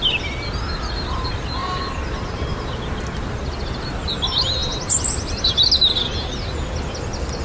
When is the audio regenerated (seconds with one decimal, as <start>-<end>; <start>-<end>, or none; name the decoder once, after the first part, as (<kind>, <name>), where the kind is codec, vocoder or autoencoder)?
none